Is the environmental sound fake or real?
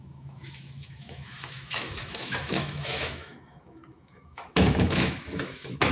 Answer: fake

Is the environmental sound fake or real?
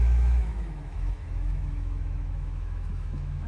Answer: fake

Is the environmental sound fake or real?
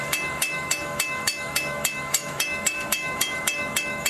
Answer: fake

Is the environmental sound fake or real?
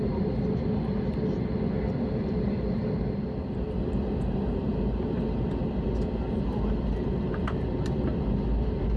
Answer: real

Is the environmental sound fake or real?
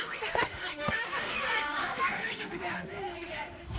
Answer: fake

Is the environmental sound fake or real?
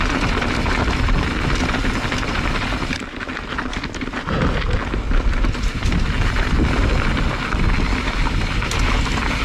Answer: real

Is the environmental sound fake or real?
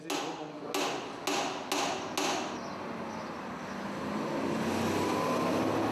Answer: real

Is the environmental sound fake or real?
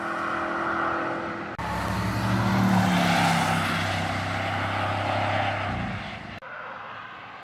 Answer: real